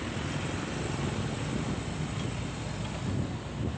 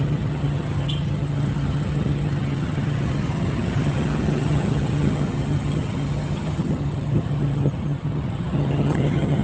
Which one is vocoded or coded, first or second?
second